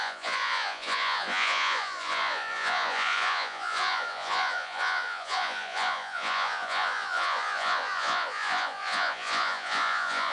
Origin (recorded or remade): remade